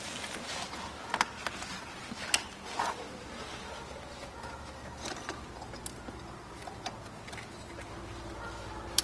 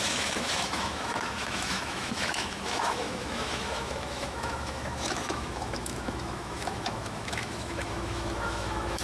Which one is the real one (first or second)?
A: first